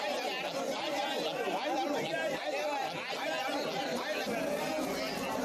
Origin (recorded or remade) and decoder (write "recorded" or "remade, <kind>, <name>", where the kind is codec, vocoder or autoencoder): recorded